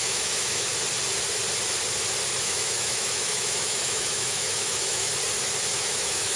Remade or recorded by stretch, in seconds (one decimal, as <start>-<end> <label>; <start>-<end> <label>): 0.0-0.7 remade; 0.7-2.4 recorded; 2.4-5.1 remade; 5.1-5.7 recorded; 5.7-6.4 remade